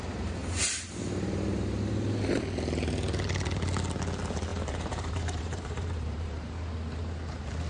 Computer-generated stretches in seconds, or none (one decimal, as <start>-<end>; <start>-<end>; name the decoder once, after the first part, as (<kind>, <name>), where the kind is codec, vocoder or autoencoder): 4.5-6.5 (vocoder, BigVGAN v2)